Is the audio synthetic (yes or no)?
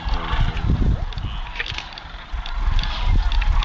no